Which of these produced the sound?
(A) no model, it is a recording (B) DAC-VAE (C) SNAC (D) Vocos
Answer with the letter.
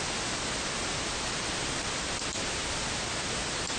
A